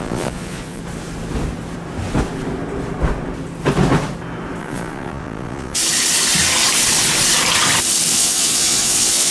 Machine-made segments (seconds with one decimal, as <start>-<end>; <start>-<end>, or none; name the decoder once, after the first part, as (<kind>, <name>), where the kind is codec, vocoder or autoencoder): 0.0-0.8 (vocoder, Vocos); 4.6-5.8; 8.1-9.3